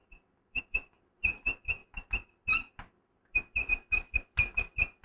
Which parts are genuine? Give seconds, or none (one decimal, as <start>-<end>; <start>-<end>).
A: 0.0-5.0